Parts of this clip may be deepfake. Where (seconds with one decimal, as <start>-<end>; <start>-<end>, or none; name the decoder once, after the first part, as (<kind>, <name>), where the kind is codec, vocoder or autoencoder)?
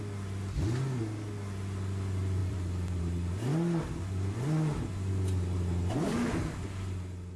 2.4-3.0 (vocoder, BigVGAN v2)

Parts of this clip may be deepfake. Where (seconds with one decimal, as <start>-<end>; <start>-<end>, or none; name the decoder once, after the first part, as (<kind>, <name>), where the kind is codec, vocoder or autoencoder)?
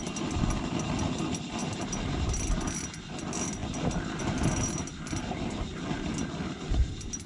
1.6-2.3 (vocoder, BigVGAN v2)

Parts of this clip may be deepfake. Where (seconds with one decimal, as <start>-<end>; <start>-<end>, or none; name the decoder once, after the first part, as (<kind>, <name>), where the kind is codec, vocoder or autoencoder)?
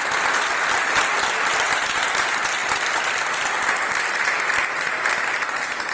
1.5-2.0 (vocoder, BigVGAN v2)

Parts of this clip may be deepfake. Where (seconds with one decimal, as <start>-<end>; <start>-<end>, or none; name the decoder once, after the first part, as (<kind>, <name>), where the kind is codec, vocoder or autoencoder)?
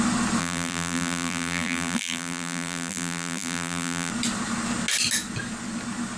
0.4-4.1 (vocoder, BigVGAN v2)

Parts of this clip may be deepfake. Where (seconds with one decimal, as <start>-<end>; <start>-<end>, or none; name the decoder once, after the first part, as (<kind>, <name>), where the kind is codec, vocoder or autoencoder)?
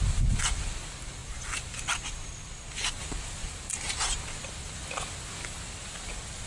1.2-2.3 (vocoder, BigVGAN v2)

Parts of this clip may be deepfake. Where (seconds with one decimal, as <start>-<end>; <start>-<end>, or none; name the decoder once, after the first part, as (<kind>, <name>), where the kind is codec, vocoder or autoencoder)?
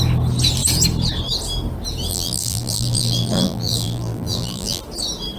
2.1-4.8 (vocoder, BigVGAN v2)